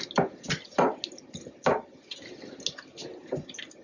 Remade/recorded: recorded